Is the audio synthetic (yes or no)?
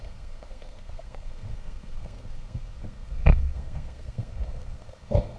yes